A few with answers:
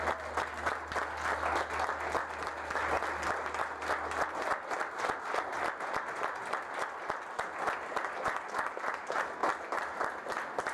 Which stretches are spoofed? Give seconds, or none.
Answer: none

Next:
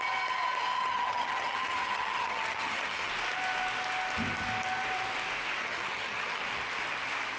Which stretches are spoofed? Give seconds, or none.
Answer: 0.8-3.1 (vocoder, HiFi-GAN); 5.6-6.4

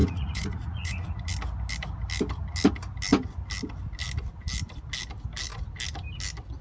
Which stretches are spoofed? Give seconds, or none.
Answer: 0.0-0.9 (vocoder, Vocos)

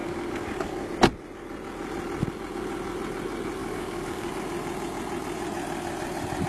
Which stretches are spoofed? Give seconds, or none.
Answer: 0.0-0.9 (codec, DAC); 3.6-4.3

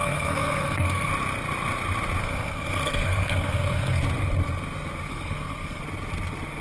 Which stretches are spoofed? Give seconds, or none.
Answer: 0.0-1.1 (codec, SNAC); 2.2-4.0; 5.1-5.8

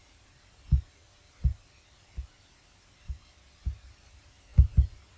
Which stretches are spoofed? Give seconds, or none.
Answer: none